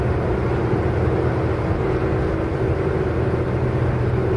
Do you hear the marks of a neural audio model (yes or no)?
no